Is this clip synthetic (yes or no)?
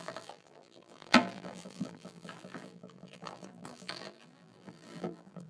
yes